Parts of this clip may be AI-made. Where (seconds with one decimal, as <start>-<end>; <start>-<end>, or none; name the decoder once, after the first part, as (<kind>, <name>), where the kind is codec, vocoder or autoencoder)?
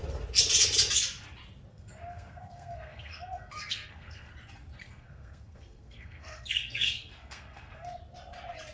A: 1.7-4.3 (codec, SNAC); 4.8-8.0